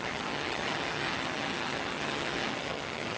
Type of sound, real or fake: fake